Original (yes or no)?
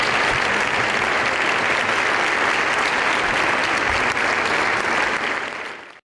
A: yes